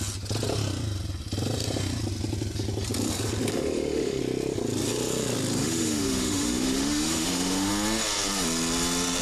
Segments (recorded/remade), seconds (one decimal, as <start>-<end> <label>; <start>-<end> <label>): 0.0-3.5 recorded; 3.5-4.2 remade; 4.2-5.6 recorded; 5.6-7.7 remade; 7.7-9.2 recorded